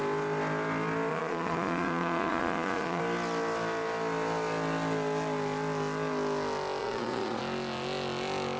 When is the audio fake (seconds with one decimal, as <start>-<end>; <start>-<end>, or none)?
1.1-3.0; 6.8-7.4